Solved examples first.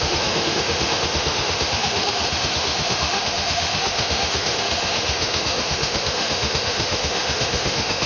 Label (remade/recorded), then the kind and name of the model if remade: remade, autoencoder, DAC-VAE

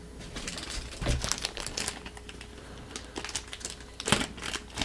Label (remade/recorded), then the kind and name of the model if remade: recorded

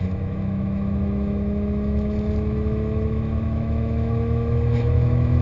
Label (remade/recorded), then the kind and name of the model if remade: remade, autoencoder, DAC-VAE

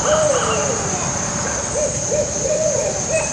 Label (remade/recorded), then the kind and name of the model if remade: recorded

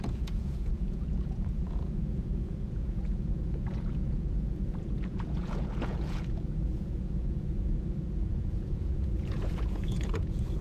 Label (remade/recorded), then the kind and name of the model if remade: remade, vocoder, Vocos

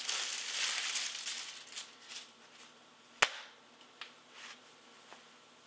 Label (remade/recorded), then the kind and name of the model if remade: recorded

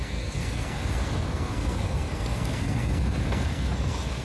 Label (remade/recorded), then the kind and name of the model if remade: remade, codec, SNAC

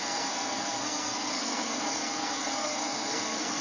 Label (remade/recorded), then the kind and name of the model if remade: remade, codec, SNAC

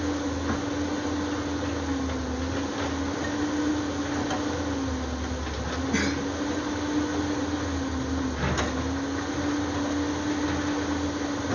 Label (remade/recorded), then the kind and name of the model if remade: recorded